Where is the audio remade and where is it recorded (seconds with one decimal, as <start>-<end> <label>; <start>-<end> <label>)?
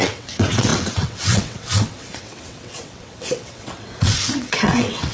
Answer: 0.0-5.1 remade